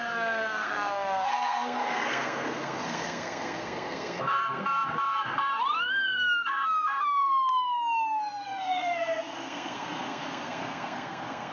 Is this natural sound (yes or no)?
no